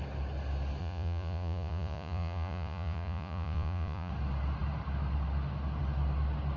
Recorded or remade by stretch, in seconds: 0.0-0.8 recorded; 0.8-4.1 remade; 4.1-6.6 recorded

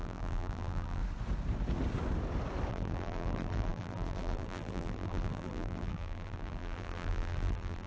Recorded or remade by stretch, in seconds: 0.0-1.0 remade; 1.0-2.7 recorded; 2.7-7.9 remade

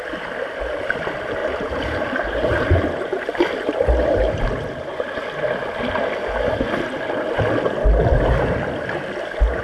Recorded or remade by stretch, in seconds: 0.0-1.4 recorded; 1.4-4.4 remade; 4.4-9.6 recorded

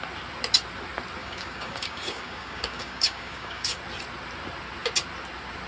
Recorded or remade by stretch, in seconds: 0.0-1.2 recorded; 1.2-3.8 remade; 3.8-5.7 recorded

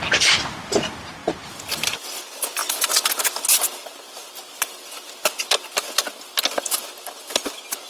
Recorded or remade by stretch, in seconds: 0.0-7.9 recorded

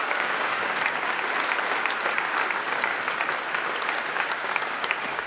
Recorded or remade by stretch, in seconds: 0.0-0.6 remade; 0.6-2.5 recorded; 2.5-2.9 remade; 2.9-4.1 recorded; 4.1-5.3 remade